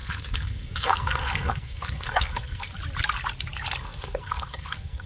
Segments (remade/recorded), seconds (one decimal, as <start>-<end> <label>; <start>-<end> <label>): 0.0-2.7 remade; 2.7-3.8 recorded; 3.8-5.1 remade